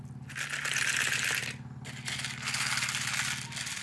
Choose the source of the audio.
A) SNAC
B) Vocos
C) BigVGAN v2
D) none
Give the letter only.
D